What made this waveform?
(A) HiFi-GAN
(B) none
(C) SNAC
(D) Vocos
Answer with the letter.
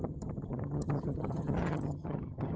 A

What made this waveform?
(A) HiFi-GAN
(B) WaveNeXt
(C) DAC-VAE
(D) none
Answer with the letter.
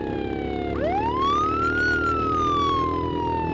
D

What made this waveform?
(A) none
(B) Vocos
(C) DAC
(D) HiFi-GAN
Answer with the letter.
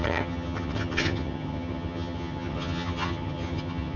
D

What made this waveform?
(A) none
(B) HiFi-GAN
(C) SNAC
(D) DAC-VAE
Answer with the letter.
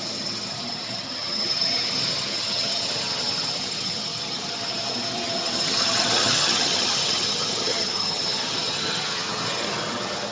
B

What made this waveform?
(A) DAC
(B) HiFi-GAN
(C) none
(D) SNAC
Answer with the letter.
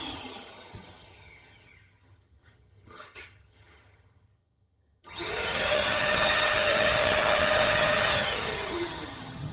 B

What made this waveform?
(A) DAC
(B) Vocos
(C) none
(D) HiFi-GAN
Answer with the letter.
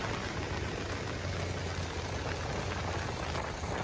C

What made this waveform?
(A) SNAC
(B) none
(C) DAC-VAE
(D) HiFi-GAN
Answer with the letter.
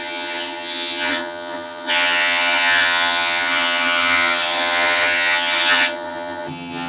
D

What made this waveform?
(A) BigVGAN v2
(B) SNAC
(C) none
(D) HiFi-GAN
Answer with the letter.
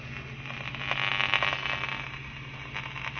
C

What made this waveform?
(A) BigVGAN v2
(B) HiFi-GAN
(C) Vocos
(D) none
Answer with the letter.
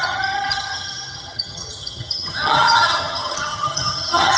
B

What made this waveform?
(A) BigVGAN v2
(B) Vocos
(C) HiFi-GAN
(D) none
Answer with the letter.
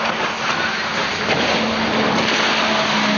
D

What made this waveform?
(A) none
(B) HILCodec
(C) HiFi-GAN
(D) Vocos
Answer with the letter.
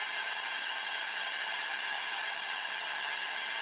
C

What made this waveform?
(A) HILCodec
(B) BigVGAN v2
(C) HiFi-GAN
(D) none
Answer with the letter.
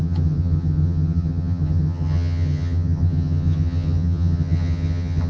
C